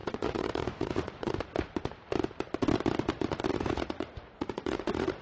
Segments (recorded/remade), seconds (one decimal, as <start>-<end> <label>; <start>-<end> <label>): 0.0-1.3 remade; 1.3-3.5 recorded; 3.5-5.2 remade

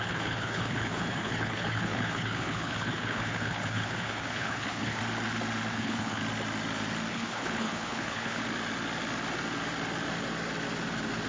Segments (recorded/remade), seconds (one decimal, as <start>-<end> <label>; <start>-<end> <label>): 0.0-5.0 remade; 5.0-5.7 recorded; 5.7-6.2 remade; 6.2-7.1 recorded; 7.1-8.4 remade; 8.4-11.3 recorded

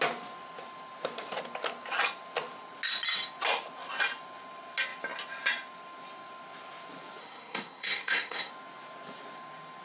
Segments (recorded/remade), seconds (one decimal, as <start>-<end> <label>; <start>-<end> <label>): 0.0-7.2 recorded; 7.2-8.5 remade; 8.5-9.8 recorded

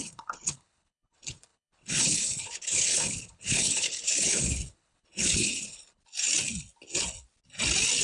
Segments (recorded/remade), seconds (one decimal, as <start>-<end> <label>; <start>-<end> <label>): 0.0-6.0 remade; 6.0-8.0 recorded

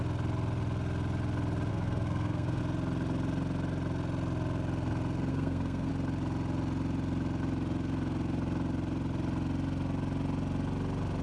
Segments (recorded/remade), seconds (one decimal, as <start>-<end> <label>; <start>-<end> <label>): 0.0-1.7 recorded; 1.7-2.6 remade; 2.6-5.3 recorded; 5.3-5.9 remade; 5.9-11.2 recorded